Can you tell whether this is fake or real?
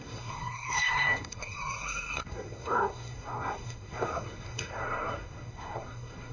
fake